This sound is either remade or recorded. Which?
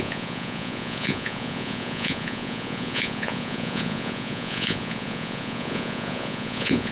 remade